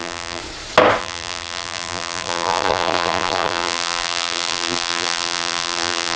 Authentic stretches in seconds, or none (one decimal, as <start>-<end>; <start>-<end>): 0.4-1.0